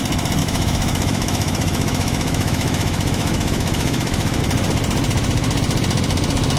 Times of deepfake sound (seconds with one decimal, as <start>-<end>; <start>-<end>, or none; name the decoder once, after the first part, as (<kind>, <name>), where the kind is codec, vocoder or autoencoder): 0.4-4.4 (autoencoder, DAC-VAE)